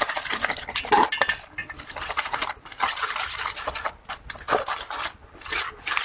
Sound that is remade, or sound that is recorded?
recorded